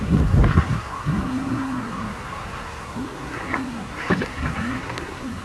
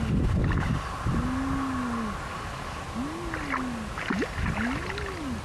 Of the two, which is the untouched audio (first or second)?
second